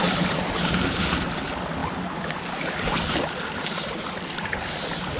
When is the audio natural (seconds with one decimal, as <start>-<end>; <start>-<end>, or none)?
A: 0.0-5.2